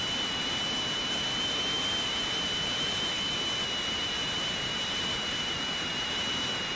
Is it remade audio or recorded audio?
recorded